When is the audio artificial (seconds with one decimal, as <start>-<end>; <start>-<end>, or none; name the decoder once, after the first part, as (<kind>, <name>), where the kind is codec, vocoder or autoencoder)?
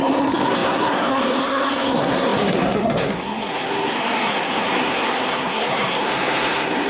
0.0-6.9 (codec, SNAC)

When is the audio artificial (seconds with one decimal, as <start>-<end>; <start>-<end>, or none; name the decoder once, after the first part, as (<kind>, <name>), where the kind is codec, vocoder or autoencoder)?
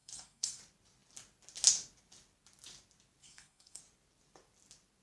0.0-0.6 (codec, SNAC); 3.2-3.8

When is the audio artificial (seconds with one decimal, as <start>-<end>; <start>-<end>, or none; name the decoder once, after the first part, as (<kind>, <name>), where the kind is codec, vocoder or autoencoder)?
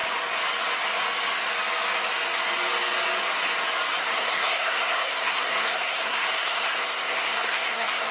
4.0-8.1 (codec, SNAC)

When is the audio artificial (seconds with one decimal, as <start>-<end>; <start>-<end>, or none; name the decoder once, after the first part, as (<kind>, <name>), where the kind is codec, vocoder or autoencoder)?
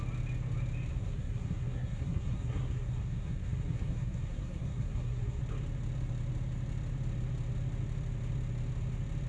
0.9-5.4 (codec, SNAC)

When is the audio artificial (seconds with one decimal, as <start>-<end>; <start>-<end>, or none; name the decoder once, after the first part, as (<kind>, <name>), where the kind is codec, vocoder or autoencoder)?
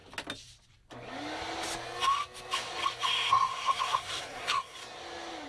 3.3-4.8 (codec, SNAC)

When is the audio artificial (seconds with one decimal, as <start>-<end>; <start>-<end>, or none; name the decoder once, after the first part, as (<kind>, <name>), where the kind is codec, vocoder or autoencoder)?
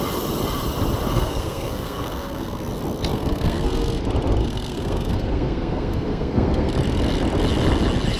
1.1-2.7 (codec, SNAC); 3.1-4.0; 4.4-6.7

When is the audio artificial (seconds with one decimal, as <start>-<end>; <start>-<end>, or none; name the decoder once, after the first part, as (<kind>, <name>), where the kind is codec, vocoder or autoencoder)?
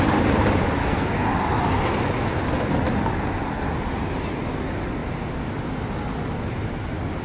0.8-1.3 (codec, SNAC)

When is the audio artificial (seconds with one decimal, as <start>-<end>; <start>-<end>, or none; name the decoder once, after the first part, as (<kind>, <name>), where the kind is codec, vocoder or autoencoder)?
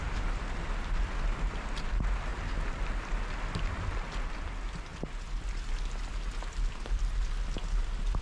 none